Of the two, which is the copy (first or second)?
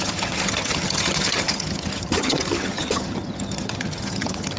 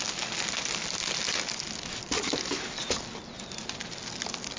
first